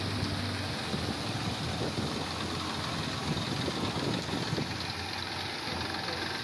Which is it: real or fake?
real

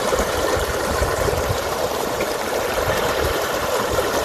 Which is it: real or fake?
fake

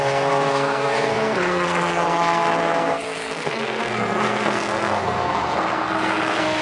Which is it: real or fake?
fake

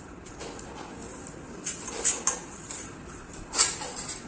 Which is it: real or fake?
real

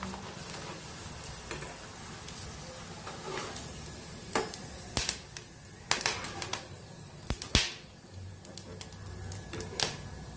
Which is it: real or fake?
real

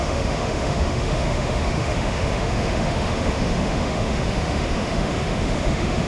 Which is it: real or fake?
fake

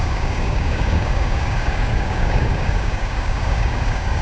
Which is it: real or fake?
fake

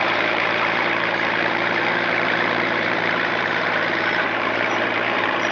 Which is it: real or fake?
fake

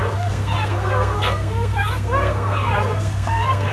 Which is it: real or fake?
fake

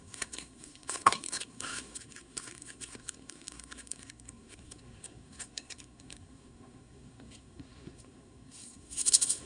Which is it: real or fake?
fake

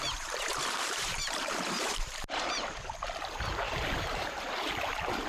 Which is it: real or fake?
fake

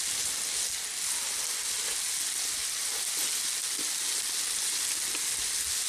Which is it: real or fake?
real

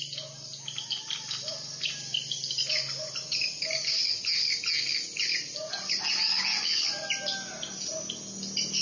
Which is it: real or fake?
real